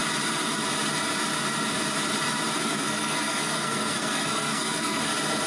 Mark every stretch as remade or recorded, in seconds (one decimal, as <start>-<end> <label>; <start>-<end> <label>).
0.0-2.6 recorded; 2.6-5.0 remade; 5.0-5.5 recorded